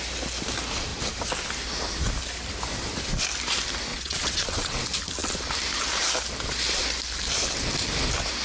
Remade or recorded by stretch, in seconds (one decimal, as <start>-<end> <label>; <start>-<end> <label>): 0.0-3.9 recorded; 3.9-4.8 remade; 4.8-8.4 recorded